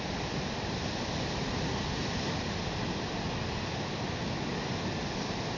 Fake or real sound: real